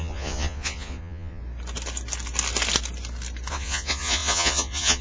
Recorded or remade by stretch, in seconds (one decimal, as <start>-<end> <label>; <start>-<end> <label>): 0.0-1.4 remade; 1.4-3.5 recorded; 3.5-5.0 remade